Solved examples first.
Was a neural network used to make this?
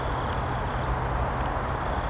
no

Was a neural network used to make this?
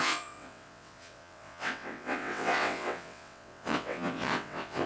yes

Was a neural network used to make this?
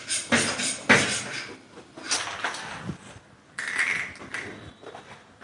no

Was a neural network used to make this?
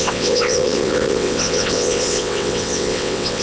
yes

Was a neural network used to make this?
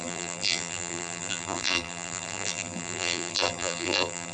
yes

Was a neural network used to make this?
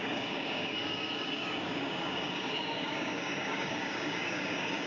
yes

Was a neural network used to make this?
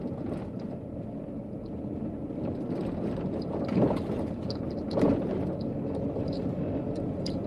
yes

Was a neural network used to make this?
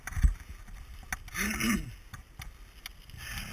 no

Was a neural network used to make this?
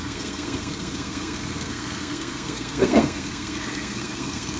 yes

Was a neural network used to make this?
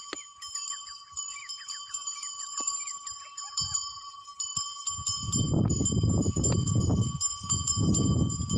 yes